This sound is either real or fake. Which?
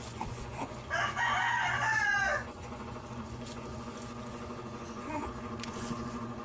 fake